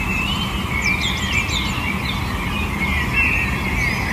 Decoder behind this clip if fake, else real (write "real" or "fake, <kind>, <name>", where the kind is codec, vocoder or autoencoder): real